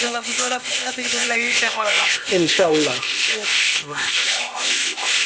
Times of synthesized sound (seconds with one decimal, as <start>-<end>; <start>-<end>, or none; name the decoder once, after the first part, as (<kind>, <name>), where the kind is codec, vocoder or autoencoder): 0.0-5.3 (codec, ZipCodec)